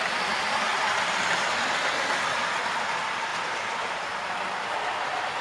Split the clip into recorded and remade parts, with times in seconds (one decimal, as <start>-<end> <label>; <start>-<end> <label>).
0.0-3.3 recorded; 3.3-4.0 remade; 4.0-5.4 recorded